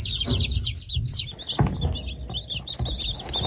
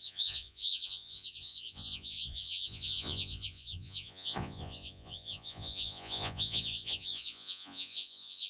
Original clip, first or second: first